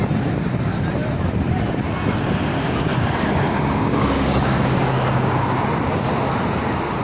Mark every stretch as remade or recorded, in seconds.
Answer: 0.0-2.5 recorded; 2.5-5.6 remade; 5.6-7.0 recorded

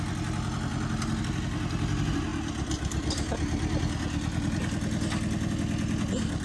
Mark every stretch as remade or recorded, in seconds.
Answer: 0.0-6.4 recorded

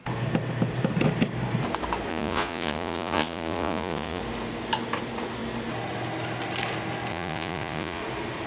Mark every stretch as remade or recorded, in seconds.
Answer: 0.0-2.1 recorded; 2.1-4.2 remade; 4.2-7.1 recorded; 7.1-8.0 remade; 8.0-8.5 recorded

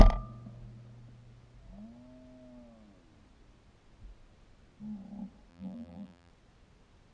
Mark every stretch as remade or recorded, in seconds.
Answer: 0.0-5.5 recorded; 5.5-6.3 remade; 6.3-7.1 recorded

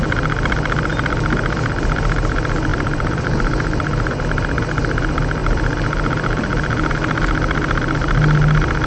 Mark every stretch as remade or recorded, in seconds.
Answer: 0.0-2.7 recorded; 2.7-4.2 remade; 4.2-8.9 recorded

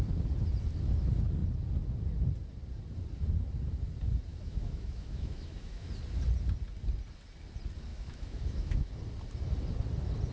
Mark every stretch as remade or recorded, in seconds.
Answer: 0.0-4.3 recorded; 4.3-5.9 remade; 5.9-7.9 recorded; 7.9-8.9 remade; 8.9-10.3 recorded

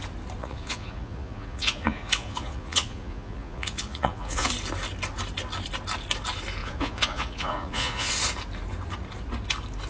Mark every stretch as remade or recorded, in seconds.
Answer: 0.0-0.4 recorded; 0.4-4.5 remade; 4.5-6.6 recorded; 6.6-8.1 remade; 8.1-9.9 recorded

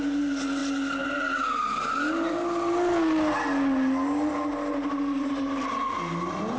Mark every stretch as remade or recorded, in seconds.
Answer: 0.0-6.6 recorded